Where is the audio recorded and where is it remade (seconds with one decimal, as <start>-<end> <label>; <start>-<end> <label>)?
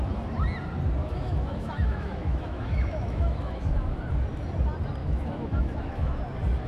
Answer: 0.0-1.0 recorded; 1.0-4.0 remade; 4.0-5.0 recorded; 5.0-6.2 remade; 6.2-6.7 recorded